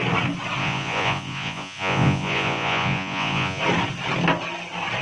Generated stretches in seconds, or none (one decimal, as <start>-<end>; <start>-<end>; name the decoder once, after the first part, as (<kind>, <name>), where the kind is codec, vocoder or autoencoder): 0.6-3.6 (vocoder, Vocos)